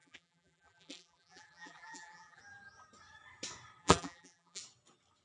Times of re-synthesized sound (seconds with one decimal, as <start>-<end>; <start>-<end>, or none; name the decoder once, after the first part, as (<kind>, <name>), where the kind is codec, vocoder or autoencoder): 0.0-2.4 (vocoder, BigVGAN v2); 3.8-4.6